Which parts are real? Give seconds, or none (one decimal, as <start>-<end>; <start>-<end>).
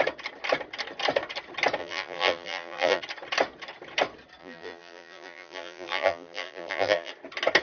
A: 0.0-1.8; 3.0-4.4; 7.1-7.6